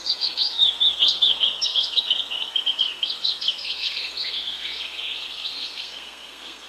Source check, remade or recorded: remade